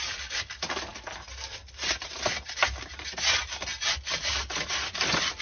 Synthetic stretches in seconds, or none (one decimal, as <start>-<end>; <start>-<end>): none